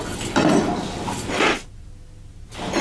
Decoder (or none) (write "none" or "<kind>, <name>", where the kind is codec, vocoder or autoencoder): none